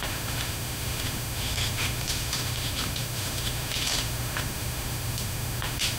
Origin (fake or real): fake